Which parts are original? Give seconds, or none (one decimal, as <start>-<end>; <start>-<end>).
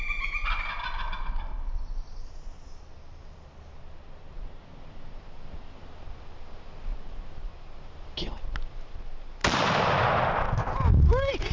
0.0-11.5